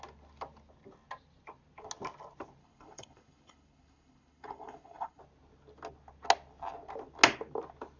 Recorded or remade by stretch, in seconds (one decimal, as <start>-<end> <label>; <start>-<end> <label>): 0.0-2.6 recorded; 2.6-5.2 remade; 5.2-8.0 recorded